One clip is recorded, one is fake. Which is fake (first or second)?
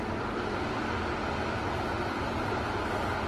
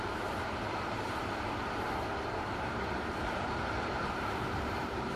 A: second